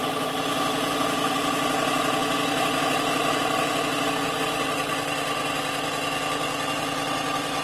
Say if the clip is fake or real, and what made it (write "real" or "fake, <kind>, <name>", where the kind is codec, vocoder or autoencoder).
real